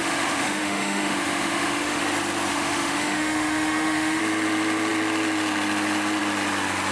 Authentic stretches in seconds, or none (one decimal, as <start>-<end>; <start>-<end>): 2.0-2.5; 4.2-6.9